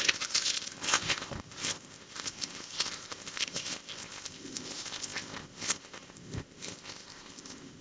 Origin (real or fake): fake